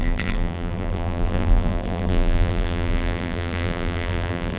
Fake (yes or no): yes